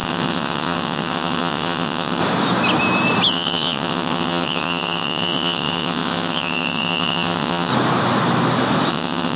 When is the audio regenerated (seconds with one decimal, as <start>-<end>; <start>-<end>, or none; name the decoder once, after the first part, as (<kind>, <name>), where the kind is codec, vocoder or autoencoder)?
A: 0.0-2.2 (vocoder, WaveNeXt); 3.3-7.7; 8.9-9.4